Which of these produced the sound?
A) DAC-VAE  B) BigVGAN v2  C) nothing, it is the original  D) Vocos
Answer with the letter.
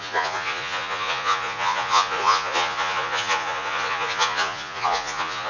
D